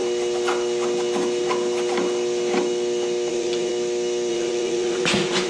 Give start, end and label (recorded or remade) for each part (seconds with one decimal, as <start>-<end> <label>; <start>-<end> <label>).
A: 0.0-3.3 recorded; 3.3-3.7 remade; 3.7-4.3 recorded; 4.3-5.5 remade